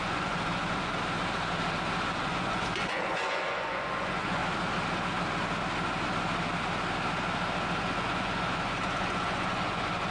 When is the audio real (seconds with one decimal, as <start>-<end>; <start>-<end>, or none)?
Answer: 0.9-2.2; 4.4-7.8